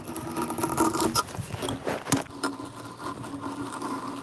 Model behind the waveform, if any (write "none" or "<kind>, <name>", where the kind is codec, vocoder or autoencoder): none